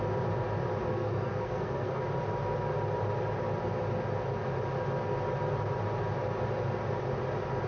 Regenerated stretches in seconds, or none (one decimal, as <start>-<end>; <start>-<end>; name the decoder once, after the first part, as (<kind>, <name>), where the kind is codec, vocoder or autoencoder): 0.9-2.0 (codec, SNAC)